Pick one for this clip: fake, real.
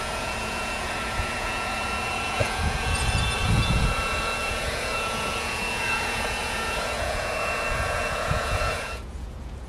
fake